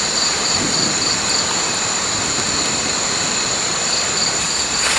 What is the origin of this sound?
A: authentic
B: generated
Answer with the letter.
B